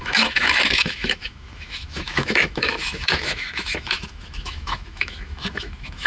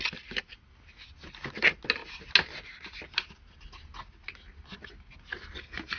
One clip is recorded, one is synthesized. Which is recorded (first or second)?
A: second